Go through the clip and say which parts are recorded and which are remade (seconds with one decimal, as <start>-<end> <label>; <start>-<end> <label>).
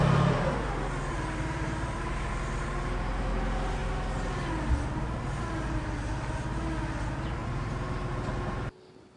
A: 0.0-1.1 recorded; 1.1-2.0 remade; 2.0-7.4 recorded; 7.4-8.1 remade; 8.1-9.2 recorded